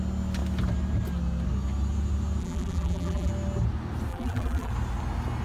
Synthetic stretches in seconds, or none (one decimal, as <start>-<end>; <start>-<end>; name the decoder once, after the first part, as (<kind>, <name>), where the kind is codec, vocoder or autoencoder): 2.4-3.3 (vocoder, BigVGAN v2); 4.1-4.7